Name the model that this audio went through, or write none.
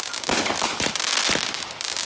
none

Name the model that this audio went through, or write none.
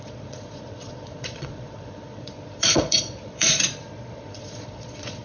vocoder, Vocos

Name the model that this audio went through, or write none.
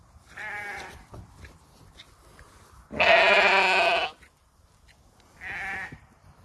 none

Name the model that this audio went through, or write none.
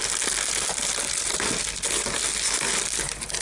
none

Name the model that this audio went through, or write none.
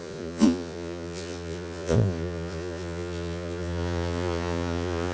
vocoder, Vocos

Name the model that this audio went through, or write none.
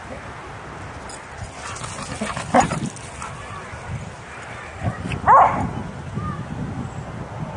none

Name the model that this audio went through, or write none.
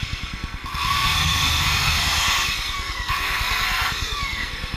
codec, SNAC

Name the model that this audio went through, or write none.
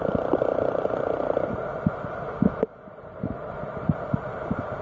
none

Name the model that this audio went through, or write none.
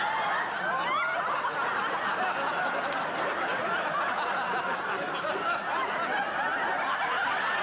none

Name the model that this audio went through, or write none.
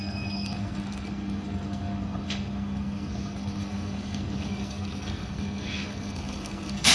codec, SNAC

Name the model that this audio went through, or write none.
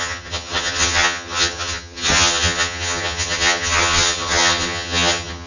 vocoder, HiFi-GAN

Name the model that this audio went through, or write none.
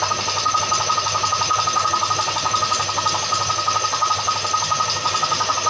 none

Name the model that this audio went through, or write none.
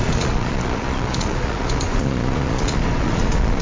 vocoder, Vocos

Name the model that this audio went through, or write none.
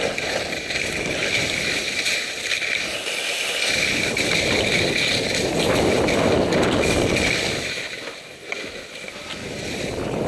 none